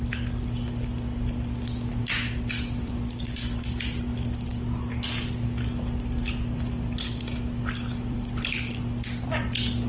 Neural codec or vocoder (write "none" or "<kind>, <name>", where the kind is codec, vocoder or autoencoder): vocoder, BigVGAN v2